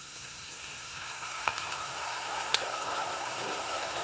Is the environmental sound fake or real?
fake